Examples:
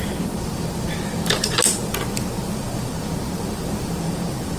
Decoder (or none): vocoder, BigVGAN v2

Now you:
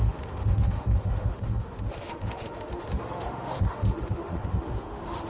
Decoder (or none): autoencoder, DAC-VAE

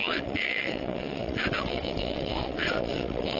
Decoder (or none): vocoder, WaveNeXt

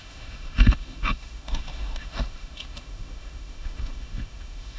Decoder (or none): autoencoder, DAC-VAE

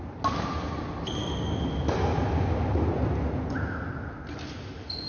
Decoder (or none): none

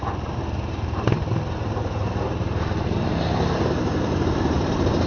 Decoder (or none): vocoder, BigVGAN v2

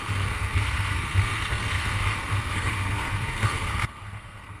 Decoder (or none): codec, SNAC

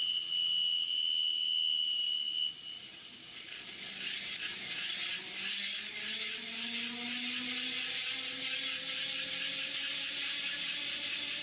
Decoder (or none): none